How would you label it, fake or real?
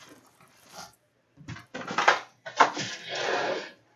fake